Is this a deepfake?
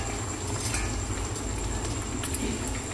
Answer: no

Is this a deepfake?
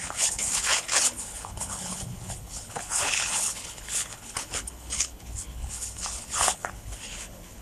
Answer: yes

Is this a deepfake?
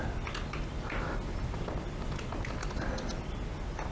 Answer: no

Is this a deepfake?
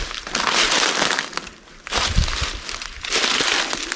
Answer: no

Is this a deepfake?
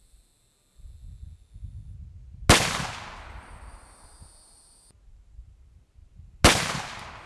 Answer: no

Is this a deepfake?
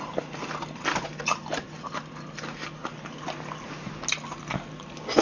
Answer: no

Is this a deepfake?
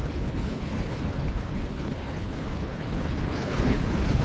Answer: yes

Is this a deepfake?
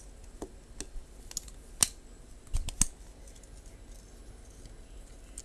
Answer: no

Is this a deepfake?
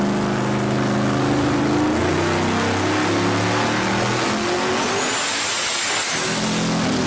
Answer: no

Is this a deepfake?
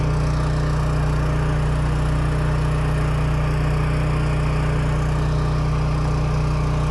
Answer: no